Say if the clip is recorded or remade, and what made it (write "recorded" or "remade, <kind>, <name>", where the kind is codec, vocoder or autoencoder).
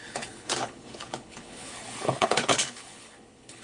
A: remade, codec, HILCodec